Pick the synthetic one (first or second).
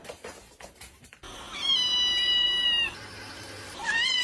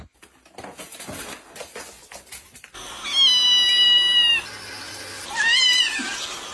first